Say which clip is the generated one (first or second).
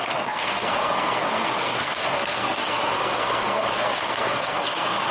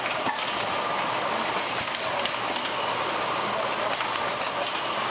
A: first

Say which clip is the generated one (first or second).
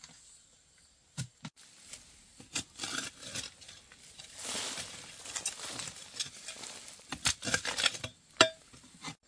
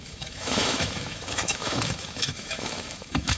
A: second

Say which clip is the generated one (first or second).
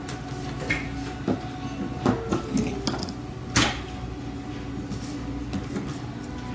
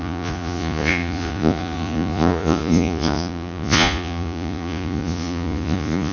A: second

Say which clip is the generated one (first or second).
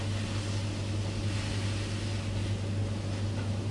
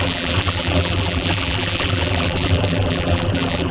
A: second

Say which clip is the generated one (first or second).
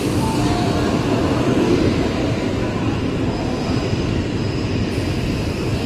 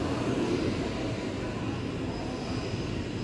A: first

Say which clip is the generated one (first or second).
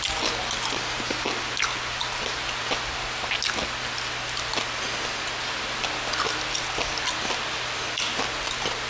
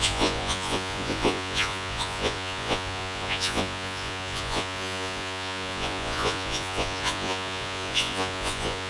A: second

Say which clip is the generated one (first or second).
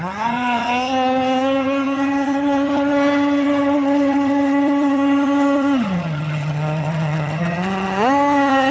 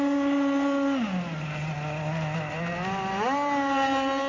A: first